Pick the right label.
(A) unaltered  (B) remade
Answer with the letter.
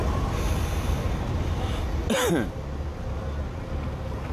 A